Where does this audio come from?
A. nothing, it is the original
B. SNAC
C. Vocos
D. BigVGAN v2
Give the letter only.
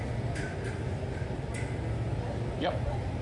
A